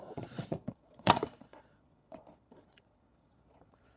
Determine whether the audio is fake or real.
fake